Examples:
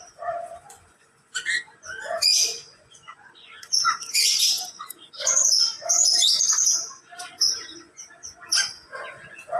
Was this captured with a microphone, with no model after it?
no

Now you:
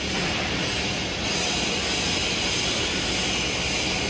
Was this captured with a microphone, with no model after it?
yes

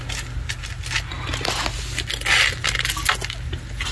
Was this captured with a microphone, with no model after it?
yes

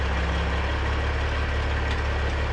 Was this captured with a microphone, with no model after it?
yes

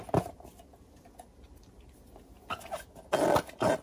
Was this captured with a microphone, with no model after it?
yes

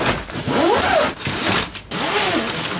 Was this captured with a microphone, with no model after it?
yes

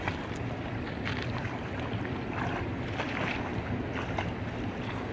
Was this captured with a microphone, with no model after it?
yes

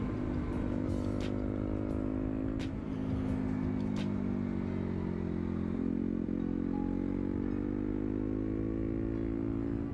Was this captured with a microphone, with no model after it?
yes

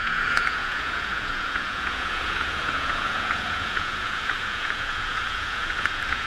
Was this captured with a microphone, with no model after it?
no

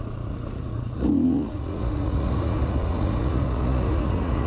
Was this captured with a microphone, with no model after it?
no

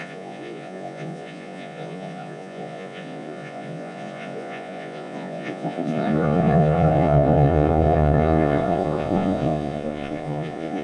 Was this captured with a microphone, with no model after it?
no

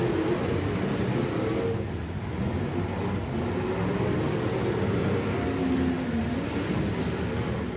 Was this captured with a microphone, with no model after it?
yes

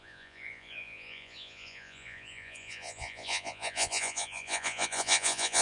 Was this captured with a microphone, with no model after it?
no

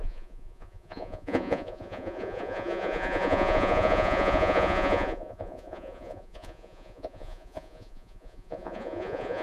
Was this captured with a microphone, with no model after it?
no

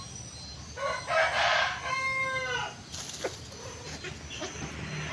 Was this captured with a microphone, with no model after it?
yes